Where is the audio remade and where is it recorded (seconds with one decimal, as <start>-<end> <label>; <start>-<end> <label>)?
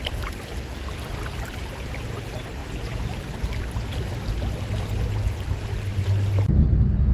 0.0-7.1 recorded